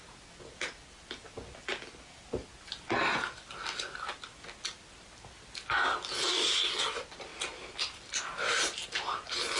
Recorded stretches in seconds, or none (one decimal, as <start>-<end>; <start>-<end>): 0.0-9.6